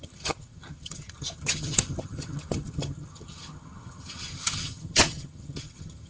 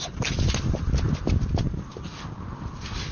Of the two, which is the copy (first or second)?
first